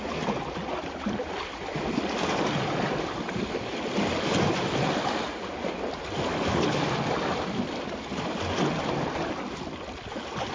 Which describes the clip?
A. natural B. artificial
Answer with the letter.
A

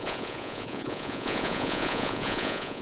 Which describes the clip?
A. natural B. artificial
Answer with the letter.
B